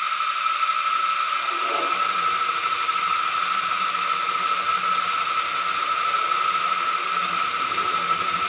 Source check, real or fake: real